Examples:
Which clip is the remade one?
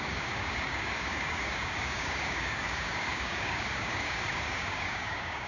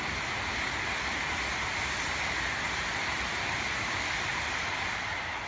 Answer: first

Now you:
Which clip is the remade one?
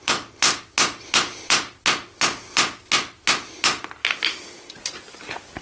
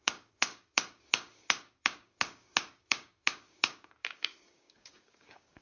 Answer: second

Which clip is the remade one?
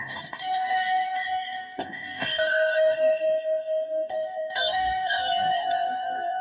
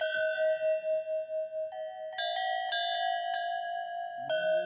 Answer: first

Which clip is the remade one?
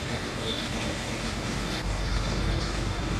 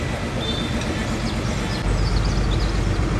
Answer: first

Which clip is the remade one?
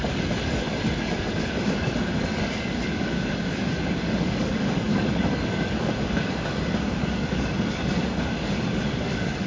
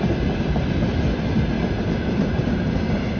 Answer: first